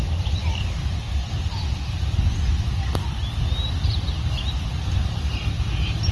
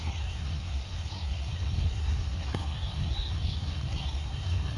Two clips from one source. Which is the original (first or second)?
first